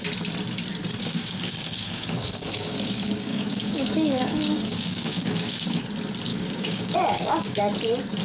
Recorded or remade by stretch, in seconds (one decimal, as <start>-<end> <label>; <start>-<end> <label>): 0.0-1.0 recorded; 1.0-5.8 remade; 5.8-6.3 recorded; 6.3-7.6 remade; 7.6-8.2 recorded